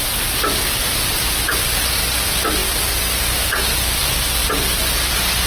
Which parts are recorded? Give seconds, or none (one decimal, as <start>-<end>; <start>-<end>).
0.0-5.5